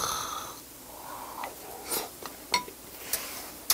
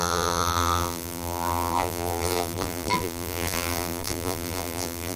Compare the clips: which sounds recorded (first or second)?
first